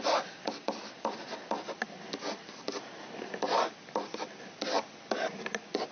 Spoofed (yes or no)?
no